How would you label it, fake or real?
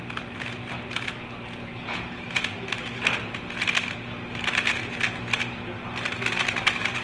real